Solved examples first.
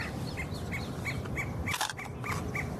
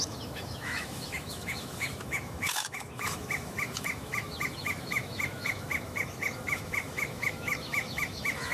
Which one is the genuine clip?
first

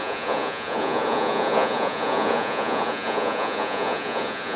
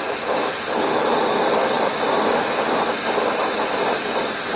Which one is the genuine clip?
second